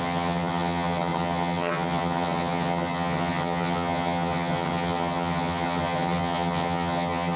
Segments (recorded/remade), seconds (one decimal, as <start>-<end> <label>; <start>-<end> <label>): 0.0-7.4 remade